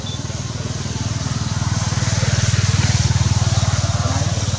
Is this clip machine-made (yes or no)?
no